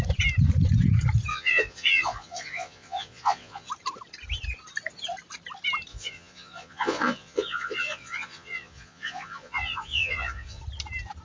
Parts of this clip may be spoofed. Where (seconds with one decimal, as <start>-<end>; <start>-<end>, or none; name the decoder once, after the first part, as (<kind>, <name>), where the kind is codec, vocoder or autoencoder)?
1.3-3.7 (vocoder, Vocos); 5.9-10.6